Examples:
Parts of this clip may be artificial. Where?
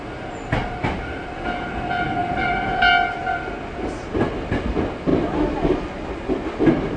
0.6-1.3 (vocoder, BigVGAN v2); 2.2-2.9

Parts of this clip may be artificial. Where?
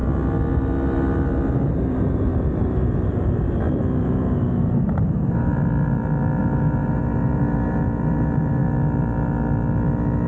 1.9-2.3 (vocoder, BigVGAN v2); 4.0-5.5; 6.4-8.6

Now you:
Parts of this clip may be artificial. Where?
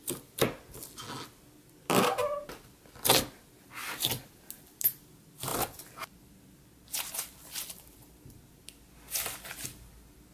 none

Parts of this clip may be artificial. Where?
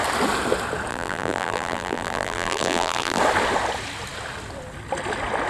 0.9-3.2 (vocoder, BigVGAN v2)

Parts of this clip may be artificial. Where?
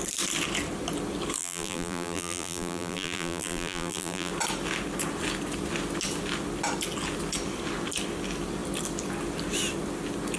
1.4-4.3 (vocoder, BigVGAN v2)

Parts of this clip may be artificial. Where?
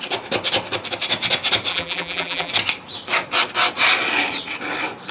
1.7-2.5 (vocoder, BigVGAN v2)